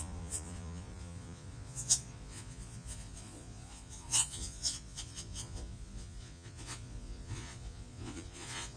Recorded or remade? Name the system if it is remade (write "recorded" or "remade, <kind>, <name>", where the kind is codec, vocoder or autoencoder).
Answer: remade, vocoder, Vocos